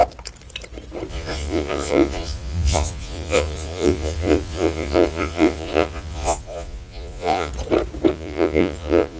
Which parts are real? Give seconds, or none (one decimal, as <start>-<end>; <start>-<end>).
0.0-1.1; 7.5-8.1